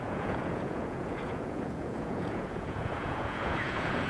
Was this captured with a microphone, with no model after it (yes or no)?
no